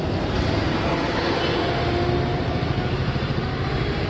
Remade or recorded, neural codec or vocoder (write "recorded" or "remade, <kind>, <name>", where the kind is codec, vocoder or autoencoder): recorded